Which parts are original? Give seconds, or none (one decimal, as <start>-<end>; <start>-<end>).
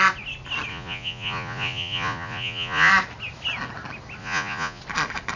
0.0-0.7; 2.9-4.2; 4.8-5.4